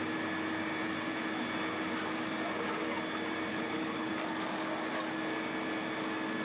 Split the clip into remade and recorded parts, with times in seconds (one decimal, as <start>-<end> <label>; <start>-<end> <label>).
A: 0.0-3.5 recorded; 3.5-4.1 remade; 4.1-6.4 recorded